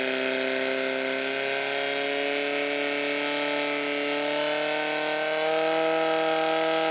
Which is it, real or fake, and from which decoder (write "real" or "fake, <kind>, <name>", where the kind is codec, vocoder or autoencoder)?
real